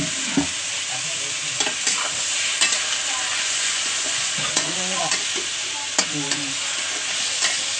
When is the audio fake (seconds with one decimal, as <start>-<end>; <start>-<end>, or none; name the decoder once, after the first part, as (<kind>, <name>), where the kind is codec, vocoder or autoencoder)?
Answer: 3.3-5.1 (vocoder, Vocos)